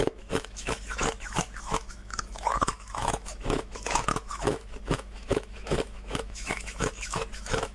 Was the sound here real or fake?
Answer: fake